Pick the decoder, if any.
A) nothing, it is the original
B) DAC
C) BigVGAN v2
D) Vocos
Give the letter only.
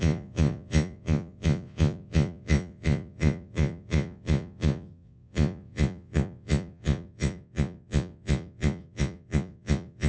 D